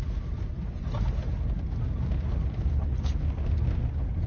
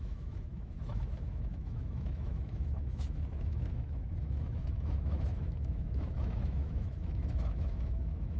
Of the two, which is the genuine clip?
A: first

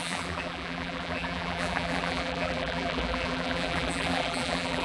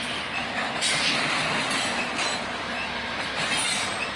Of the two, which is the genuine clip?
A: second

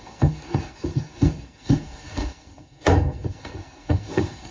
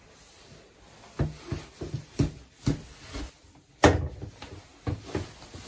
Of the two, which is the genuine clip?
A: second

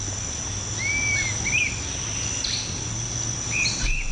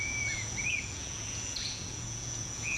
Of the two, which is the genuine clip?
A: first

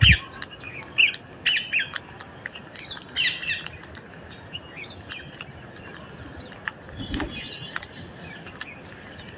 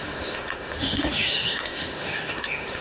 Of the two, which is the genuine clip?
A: first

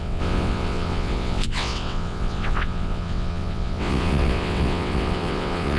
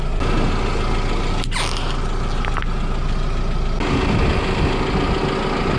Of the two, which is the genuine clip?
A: second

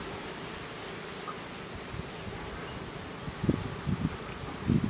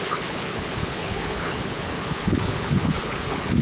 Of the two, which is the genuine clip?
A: first